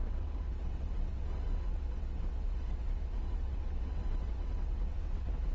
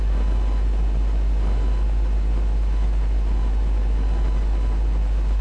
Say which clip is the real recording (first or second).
second